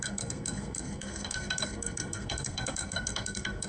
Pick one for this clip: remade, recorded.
remade